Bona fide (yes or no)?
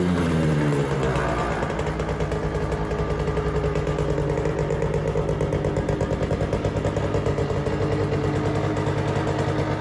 yes